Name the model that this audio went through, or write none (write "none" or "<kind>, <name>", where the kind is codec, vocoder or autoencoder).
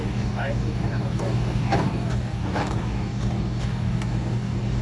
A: codec, DAC